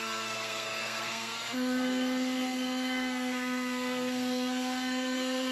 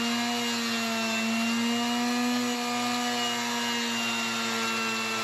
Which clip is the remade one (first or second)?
first